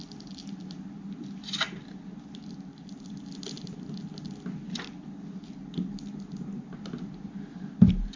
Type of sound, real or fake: real